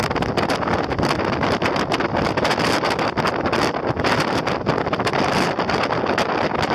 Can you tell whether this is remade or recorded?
recorded